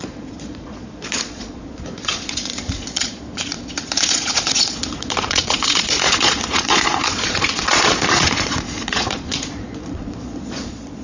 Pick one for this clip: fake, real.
fake